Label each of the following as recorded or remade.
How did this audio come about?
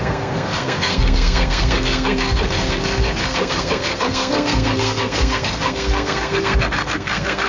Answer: remade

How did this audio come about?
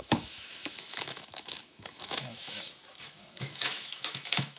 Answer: remade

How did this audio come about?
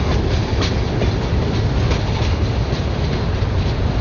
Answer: recorded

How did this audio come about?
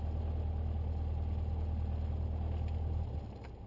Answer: recorded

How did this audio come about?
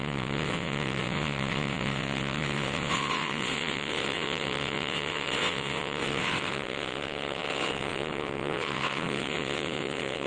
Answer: remade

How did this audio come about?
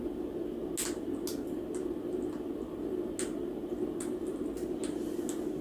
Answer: recorded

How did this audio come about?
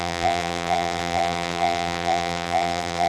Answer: remade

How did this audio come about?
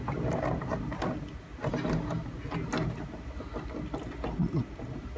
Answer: recorded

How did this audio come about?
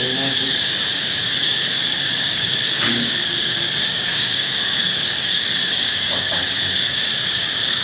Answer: remade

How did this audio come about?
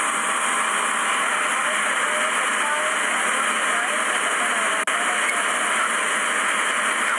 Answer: recorded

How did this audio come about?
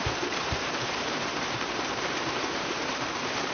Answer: remade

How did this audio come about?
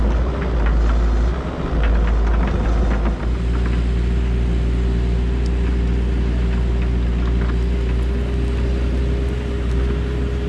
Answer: recorded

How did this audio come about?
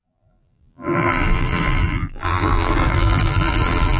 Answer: remade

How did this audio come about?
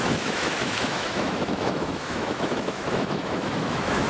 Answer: remade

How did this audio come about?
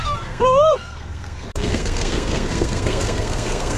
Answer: remade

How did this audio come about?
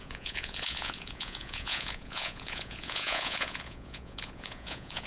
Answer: remade